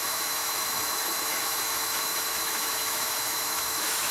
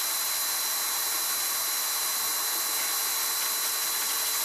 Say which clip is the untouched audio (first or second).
second